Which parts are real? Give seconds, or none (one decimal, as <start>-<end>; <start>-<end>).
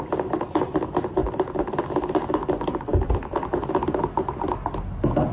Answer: 0.0-5.3